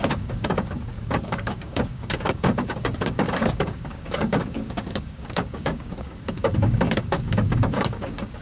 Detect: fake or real fake